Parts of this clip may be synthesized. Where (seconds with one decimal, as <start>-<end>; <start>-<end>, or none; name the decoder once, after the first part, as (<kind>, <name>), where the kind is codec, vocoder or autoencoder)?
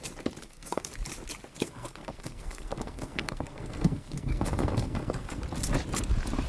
0.4-0.9 (codec, SNAC); 1.5-5.4